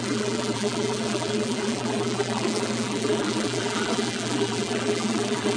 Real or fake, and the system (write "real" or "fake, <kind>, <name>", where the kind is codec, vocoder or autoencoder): fake, vocoder, BigVGAN v2